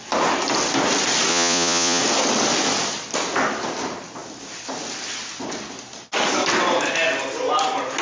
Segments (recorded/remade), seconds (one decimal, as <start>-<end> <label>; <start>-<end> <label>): 0.0-1.3 recorded; 1.3-2.0 remade; 2.0-8.0 recorded